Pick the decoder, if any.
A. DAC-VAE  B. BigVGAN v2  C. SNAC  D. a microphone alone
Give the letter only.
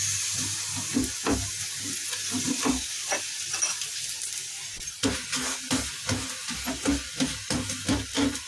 D